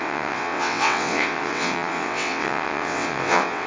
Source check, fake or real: fake